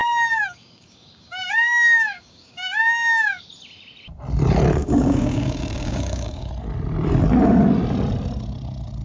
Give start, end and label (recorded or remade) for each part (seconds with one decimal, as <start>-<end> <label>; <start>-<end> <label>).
0.0-3.4 remade; 3.4-4.8 recorded; 4.8-6.5 remade; 6.5-9.0 recorded